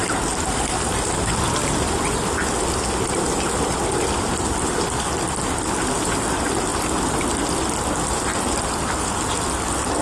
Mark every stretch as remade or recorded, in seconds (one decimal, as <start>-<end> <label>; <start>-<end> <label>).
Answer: 0.0-10.0 recorded